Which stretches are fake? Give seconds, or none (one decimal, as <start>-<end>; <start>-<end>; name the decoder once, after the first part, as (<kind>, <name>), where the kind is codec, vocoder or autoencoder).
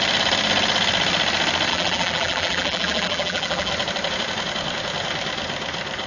1.7-3.7 (vocoder, BigVGAN v2)